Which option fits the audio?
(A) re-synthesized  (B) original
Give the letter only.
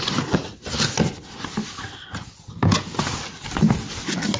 B